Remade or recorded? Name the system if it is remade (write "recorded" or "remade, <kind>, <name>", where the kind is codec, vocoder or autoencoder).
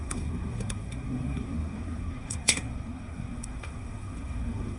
remade, codec, SNAC